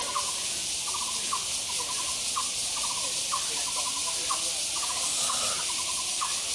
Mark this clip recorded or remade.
recorded